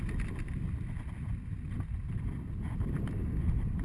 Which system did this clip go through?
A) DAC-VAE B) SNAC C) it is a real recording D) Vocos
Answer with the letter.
C